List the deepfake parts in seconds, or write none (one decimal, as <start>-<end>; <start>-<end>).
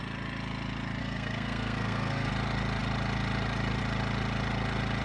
1.0-2.3